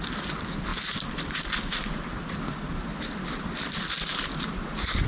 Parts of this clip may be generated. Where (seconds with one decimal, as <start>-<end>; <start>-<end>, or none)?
none